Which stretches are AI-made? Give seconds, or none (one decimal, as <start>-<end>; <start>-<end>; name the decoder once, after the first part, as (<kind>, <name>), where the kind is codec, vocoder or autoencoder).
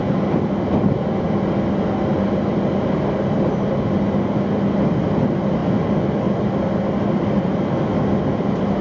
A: none